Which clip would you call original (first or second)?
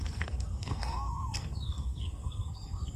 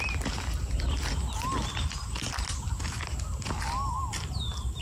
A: second